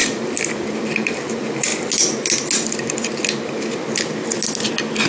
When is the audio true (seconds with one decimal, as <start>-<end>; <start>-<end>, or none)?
0.0-0.8; 1.7-5.1